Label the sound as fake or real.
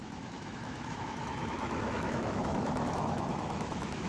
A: fake